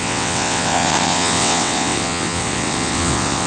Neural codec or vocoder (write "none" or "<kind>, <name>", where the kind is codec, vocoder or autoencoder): vocoder, WaveNeXt